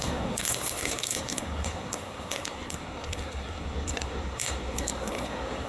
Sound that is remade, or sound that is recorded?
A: remade